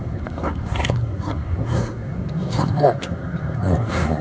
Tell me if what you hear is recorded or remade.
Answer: remade